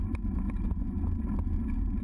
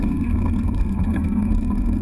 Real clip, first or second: first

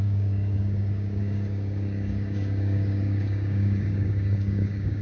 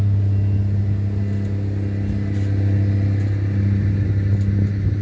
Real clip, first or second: second